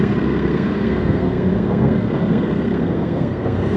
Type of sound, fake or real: fake